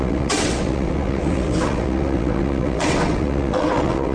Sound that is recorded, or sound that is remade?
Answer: remade